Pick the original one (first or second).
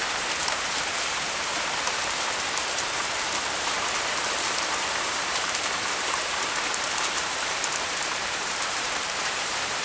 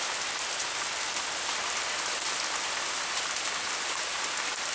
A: second